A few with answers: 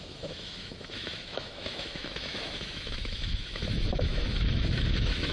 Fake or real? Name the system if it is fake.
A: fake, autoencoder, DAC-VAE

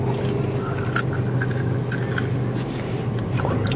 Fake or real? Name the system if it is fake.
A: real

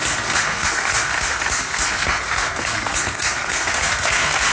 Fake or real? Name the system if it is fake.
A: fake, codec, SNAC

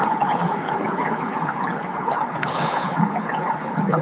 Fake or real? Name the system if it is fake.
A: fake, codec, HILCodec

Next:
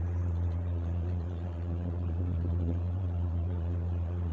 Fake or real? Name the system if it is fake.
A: fake, vocoder, Vocos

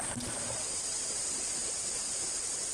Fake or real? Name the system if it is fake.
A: real